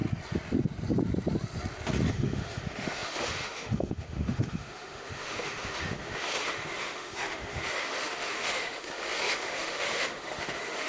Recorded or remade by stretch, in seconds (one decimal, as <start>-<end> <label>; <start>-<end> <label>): 0.0-2.1 recorded; 2.1-10.9 remade